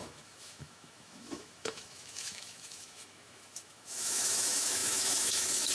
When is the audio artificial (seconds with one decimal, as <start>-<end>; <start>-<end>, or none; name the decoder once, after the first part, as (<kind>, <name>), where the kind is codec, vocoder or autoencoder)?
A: 0.0-5.7 (autoencoder, DAC-VAE)